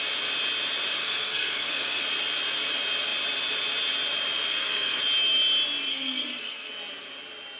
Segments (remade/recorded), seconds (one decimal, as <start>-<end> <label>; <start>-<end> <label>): 0.0-1.0 recorded; 1.0-2.0 remade; 2.0-4.5 recorded; 4.5-5.0 remade; 5.0-5.9 recorded; 5.9-6.7 remade; 6.7-7.6 recorded

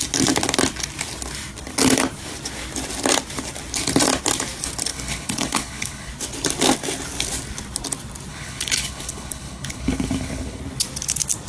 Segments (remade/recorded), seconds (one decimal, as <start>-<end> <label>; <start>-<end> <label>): 0.0-4.9 recorded; 4.9-6.1 remade; 6.1-8.3 recorded; 8.3-10.6 remade; 10.6-11.5 recorded

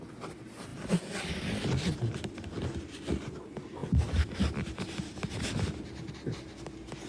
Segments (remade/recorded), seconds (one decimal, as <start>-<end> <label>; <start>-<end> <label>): 0.0-7.1 recorded

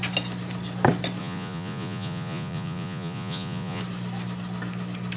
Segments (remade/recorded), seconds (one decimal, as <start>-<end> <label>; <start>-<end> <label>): 0.0-1.2 recorded; 1.2-3.8 remade; 3.8-5.2 recorded

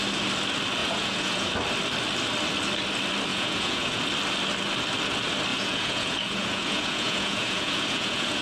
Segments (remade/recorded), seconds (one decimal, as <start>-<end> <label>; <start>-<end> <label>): 0.0-0.8 recorded; 0.8-1.5 remade; 1.5-3.3 recorded; 3.3-4.0 remade; 4.0-5.5 recorded; 5.5-8.4 remade

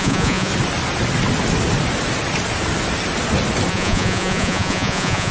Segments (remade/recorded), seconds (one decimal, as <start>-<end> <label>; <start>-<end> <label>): 0.0-0.5 remade; 0.5-3.7 recorded; 3.7-5.3 remade